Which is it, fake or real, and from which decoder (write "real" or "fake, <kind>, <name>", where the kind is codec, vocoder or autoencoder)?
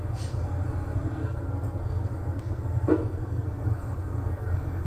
fake, codec, SNAC